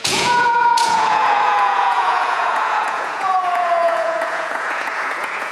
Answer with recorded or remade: remade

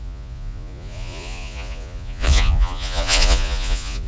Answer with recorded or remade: remade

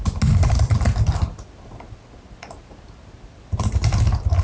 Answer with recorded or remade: recorded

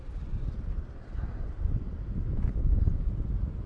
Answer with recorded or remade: recorded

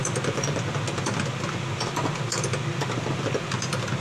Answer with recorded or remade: recorded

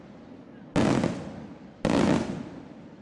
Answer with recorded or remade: recorded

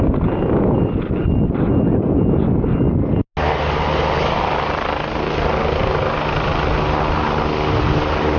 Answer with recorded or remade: recorded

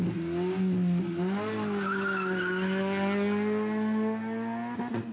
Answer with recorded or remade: recorded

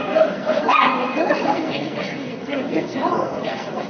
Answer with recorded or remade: remade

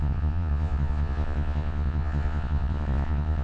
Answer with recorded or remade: remade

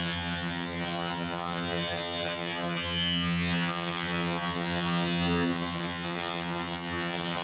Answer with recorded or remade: remade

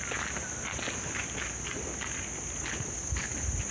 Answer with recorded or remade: recorded